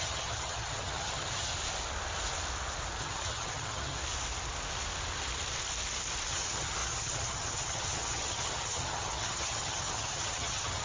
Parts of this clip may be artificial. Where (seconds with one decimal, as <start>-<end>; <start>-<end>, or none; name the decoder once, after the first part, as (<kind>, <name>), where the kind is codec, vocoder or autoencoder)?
0.0-1.5 (vocoder, HiFi-GAN); 3.0-4.0; 6.3-10.8